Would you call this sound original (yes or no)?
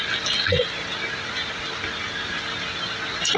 yes